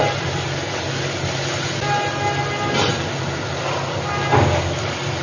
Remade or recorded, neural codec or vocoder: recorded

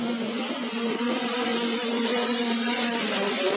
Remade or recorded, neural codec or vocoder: remade, vocoder, Vocos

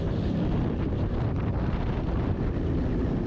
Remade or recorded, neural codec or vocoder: recorded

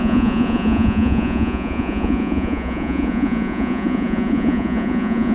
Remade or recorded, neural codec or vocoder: remade, vocoder, Vocos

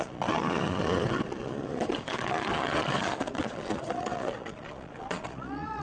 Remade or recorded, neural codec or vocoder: remade, vocoder, Vocos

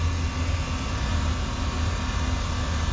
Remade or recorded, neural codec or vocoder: recorded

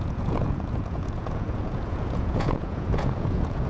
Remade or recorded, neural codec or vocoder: remade, vocoder, Vocos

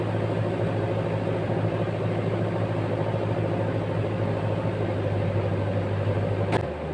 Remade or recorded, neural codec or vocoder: recorded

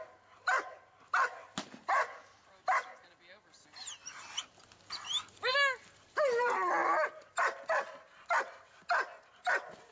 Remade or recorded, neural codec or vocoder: recorded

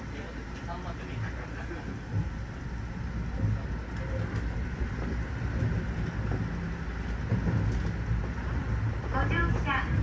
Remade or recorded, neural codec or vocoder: recorded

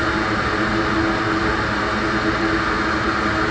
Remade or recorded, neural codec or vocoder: recorded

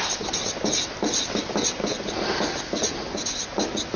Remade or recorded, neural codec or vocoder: recorded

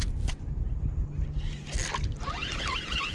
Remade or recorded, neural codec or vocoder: recorded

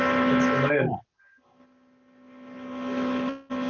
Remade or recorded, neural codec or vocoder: recorded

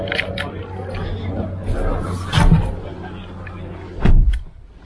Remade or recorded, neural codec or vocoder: recorded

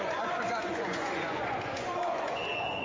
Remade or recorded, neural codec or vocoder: remade, vocoder, Vocos